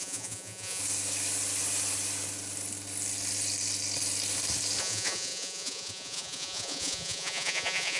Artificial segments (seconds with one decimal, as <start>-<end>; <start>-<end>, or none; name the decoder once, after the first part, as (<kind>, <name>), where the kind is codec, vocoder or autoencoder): 0.0-0.8 (vocoder, Vocos); 4.8-8.0